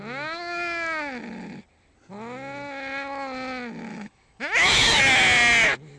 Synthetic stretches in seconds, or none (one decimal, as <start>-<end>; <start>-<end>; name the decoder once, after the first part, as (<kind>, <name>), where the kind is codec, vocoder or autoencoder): 3.9-5.0 (autoencoder, DAC-VAE)